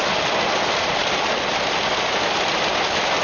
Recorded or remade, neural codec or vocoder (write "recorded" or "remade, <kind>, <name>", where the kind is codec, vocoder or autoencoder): recorded